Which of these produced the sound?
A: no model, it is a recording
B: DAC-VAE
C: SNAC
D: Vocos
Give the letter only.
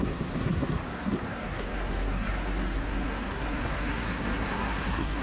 C